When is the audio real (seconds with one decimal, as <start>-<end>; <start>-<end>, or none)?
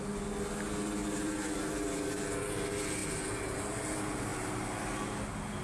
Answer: 0.0-5.6